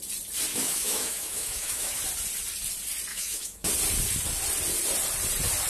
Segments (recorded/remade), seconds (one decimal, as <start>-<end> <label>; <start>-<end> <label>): 0.0-0.5 recorded; 0.5-2.0 remade; 2.0-3.1 recorded; 3.1-3.7 remade; 3.7-5.7 recorded